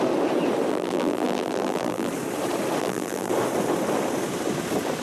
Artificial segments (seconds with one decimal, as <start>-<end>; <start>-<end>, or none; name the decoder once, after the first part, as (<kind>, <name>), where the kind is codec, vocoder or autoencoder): 0.7-2.1 (vocoder, BigVGAN v2); 2.8-3.3